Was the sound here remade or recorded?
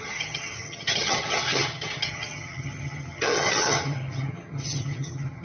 remade